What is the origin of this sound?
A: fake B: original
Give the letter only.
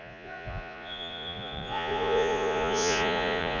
A